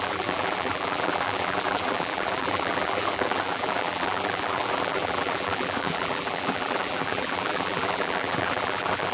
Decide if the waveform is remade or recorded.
remade